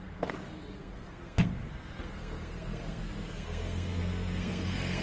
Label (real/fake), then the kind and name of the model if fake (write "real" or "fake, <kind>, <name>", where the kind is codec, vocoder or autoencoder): fake, codec, SNAC